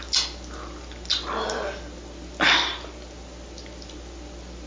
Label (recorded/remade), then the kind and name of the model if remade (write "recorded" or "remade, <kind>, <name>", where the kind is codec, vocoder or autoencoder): recorded